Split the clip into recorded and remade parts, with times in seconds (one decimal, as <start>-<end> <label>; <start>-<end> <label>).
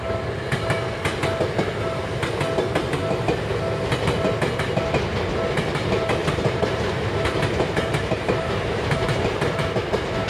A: 0.0-6.2 recorded; 6.2-9.2 remade; 9.2-10.3 recorded